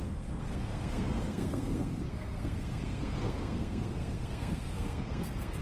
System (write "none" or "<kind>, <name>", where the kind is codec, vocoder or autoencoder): codec, SNAC